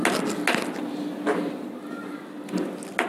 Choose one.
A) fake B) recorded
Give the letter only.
B